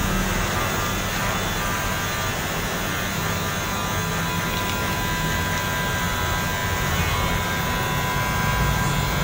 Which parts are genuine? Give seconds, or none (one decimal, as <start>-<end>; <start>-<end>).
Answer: 0.0-9.2